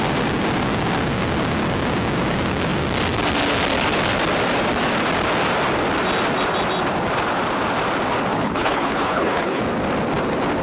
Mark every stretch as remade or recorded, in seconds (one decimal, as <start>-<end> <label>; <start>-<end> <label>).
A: 0.0-8.3 recorded; 8.3-9.6 remade; 9.6-10.6 recorded